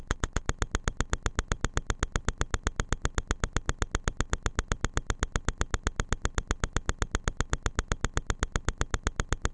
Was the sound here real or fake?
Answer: real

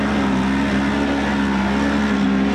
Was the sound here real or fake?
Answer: real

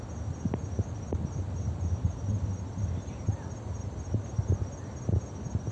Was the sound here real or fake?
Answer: real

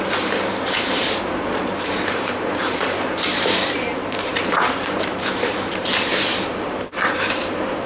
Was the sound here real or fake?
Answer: fake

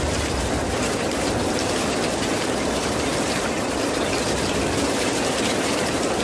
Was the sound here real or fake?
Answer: fake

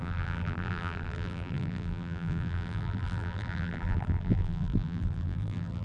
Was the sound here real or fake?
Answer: fake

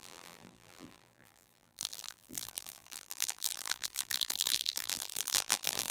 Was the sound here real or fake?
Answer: fake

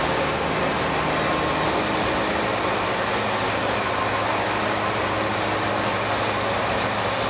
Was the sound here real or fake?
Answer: real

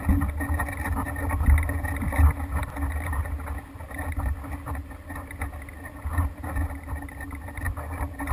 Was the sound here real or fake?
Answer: real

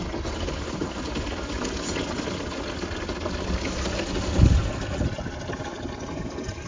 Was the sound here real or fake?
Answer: real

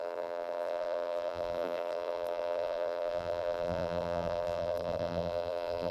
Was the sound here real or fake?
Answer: fake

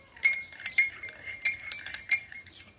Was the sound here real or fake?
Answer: fake